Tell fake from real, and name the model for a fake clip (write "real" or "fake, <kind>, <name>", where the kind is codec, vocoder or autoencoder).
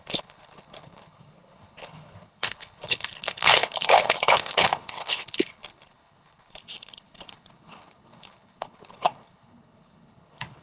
fake, codec, HILCodec